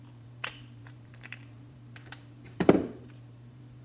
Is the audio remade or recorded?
remade